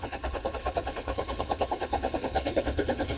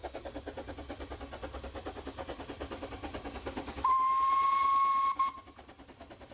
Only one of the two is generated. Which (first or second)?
first